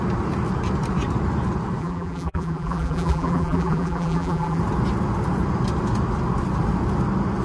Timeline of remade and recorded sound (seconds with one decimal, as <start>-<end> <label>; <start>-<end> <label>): 0.0-1.8 recorded; 1.8-4.6 remade; 4.6-7.4 recorded